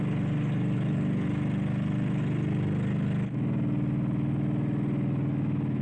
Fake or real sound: real